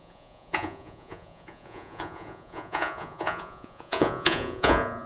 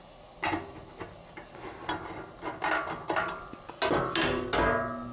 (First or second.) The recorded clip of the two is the second